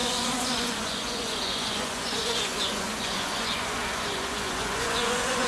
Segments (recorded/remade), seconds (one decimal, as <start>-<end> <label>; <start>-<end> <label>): 0.0-5.5 remade